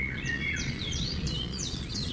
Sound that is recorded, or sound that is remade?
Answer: remade